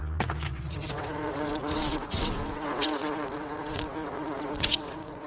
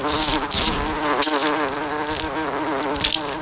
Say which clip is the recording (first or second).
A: second